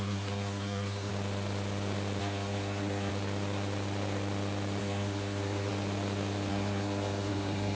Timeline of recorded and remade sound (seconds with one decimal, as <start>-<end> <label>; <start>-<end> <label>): 0.0-1.1 remade; 1.1-2.2 recorded; 2.2-3.1 remade; 3.1-4.8 recorded; 4.8-5.7 remade; 5.7-6.5 recorded; 6.5-7.7 remade